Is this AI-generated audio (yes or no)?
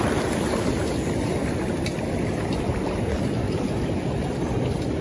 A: no